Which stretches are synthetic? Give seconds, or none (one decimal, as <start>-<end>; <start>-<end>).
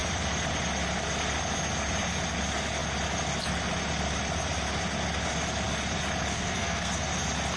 6.3-7.1